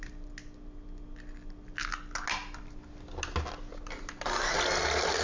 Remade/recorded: recorded